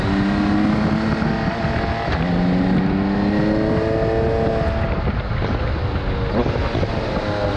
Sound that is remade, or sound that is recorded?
recorded